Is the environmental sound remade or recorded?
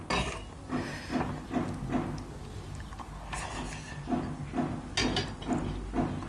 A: recorded